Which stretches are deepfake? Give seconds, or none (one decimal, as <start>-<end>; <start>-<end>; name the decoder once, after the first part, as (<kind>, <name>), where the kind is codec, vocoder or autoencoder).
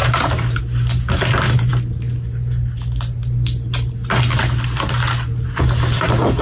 0.0-0.6 (vocoder, BigVGAN v2)